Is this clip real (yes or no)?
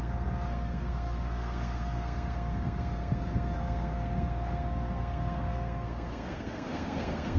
no